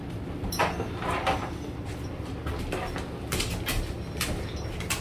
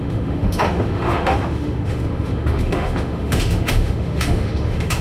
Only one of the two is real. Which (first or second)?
first